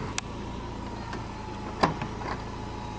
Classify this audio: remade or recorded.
recorded